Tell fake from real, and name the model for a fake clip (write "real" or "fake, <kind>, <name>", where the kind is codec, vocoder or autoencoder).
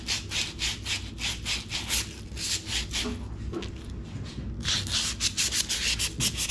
real